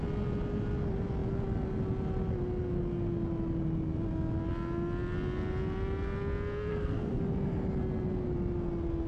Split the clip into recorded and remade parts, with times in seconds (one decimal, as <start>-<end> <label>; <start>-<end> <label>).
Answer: 0.0-6.7 recorded; 6.7-7.2 remade; 7.2-9.1 recorded